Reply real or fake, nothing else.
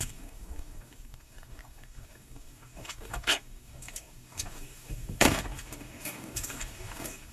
fake